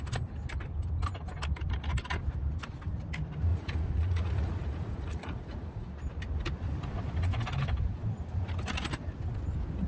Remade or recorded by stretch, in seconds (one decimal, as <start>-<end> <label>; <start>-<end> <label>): 0.0-3.5 recorded; 3.5-5.9 remade; 5.9-9.9 recorded